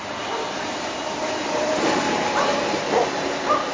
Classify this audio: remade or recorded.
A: remade